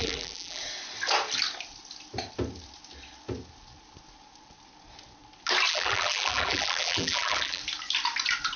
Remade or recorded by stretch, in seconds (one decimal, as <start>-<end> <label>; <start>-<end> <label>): 0.0-0.6 remade; 0.6-5.7 recorded; 5.7-7.6 remade; 7.6-8.6 recorded